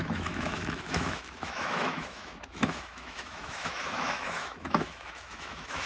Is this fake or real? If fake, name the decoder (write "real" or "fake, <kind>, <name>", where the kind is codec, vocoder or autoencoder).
fake, autoencoder, DAC-VAE